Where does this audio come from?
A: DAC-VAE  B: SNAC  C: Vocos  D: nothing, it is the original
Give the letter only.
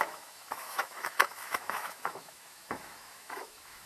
A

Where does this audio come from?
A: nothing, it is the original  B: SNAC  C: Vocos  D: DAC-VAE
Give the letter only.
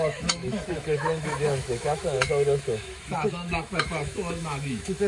D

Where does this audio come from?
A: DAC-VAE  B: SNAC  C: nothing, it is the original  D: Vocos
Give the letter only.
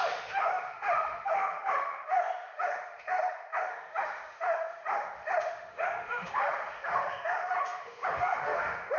A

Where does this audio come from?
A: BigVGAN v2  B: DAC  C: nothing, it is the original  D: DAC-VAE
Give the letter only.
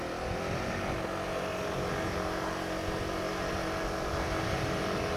C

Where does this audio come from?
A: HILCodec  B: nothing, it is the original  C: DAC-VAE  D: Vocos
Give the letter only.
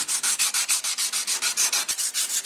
B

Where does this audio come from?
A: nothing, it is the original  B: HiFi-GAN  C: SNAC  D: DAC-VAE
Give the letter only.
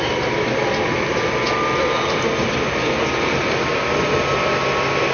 A